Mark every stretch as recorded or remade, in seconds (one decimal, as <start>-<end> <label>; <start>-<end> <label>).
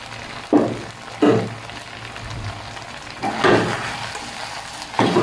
0.0-5.2 recorded